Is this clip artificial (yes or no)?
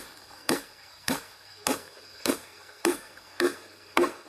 yes